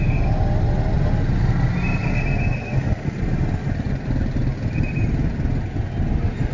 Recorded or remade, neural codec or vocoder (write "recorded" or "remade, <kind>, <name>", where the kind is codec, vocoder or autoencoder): recorded